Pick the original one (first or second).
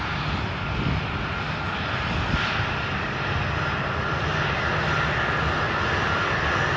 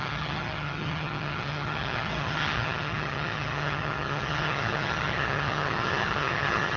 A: first